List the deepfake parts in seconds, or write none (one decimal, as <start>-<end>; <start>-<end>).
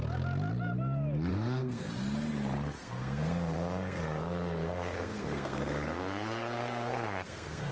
1.3-1.9; 2.8-7.7